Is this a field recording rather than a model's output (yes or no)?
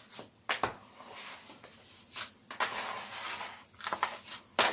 yes